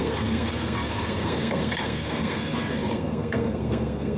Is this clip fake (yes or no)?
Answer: yes